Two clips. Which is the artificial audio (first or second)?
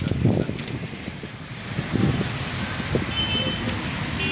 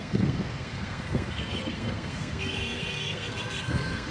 second